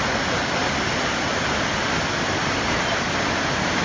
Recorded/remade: recorded